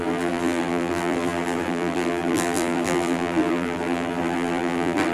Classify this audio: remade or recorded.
remade